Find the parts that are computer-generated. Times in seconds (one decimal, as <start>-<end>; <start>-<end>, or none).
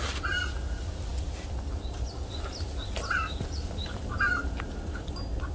none